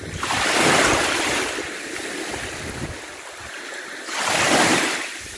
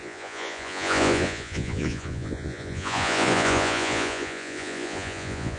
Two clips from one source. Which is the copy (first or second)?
second